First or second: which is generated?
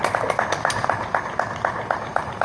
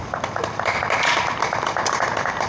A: second